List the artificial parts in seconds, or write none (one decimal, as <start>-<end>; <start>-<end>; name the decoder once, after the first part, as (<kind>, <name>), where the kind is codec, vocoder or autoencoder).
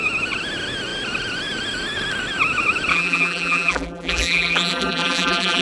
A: 2.9-5.6 (vocoder, BigVGAN v2)